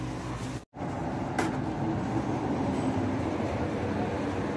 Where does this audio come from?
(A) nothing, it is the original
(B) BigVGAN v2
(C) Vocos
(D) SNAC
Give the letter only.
A